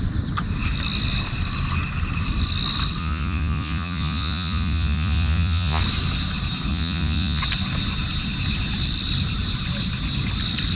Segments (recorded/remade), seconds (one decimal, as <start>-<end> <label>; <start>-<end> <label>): 0.0-3.0 recorded; 3.0-5.8 remade; 5.8-6.7 recorded; 6.7-7.4 remade; 7.4-10.7 recorded